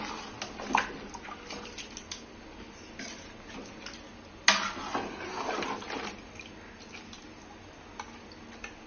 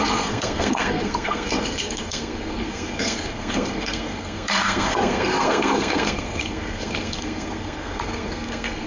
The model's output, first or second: second